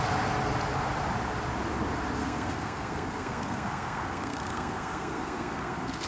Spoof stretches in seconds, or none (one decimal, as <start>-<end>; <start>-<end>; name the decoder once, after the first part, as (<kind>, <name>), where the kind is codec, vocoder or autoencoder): 2.2-6.1 (codec, SNAC)

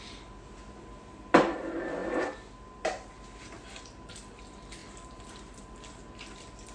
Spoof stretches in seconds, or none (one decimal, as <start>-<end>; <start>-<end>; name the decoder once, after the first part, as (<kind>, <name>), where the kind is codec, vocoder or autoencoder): none

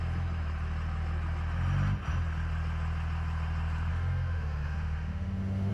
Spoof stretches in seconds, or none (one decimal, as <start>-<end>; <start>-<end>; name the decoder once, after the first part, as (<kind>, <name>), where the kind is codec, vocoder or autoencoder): 3.9-5.7 (autoencoder, DAC-VAE)

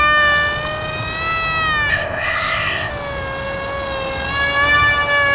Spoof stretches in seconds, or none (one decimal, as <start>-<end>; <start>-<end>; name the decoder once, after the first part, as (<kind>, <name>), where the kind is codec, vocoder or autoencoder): 1.9-2.9 (codec, ZipCodec)

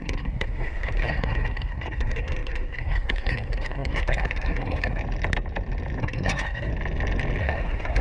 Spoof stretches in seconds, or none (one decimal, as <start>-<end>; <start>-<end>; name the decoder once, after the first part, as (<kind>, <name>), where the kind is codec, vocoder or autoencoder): 0.0-5.0 (codec, SNAC); 6.0-6.7; 7.4-8.0

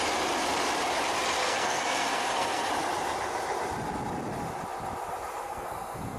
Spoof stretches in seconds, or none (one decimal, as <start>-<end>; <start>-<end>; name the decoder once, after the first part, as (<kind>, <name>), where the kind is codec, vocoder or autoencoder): 1.4-2.7 (codec, SNAC); 5.4-6.2